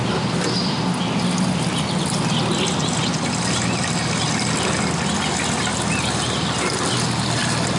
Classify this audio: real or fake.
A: real